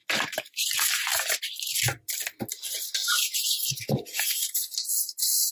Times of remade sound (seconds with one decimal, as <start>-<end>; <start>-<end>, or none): 3.0-5.5